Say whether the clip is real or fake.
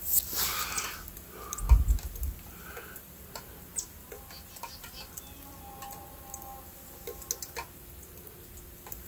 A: real